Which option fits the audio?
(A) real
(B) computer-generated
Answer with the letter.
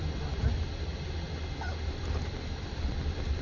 A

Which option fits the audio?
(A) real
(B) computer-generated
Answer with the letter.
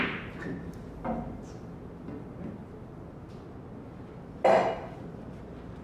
A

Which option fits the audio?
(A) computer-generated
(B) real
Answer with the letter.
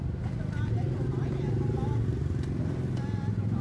B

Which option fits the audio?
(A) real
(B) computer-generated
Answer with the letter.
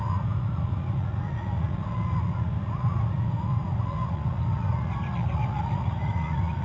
B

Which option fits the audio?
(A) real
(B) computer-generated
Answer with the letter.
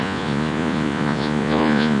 B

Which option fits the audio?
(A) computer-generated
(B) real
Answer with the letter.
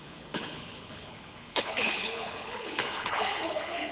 A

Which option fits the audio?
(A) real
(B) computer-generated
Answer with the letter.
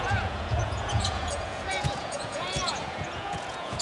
B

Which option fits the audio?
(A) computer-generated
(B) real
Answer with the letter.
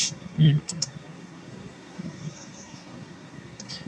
A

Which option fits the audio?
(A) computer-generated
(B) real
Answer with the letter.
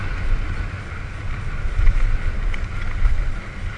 B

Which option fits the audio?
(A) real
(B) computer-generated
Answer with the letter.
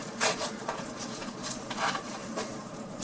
B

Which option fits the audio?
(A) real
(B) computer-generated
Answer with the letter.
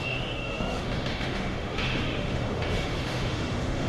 B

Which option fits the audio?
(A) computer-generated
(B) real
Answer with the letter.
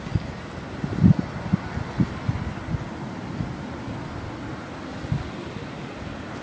B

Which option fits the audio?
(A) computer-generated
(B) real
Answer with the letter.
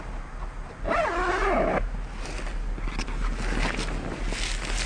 B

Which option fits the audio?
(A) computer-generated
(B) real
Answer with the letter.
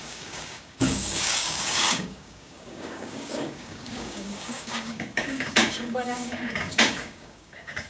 A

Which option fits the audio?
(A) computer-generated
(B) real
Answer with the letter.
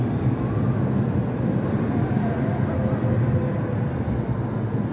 B